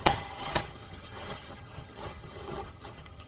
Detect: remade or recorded remade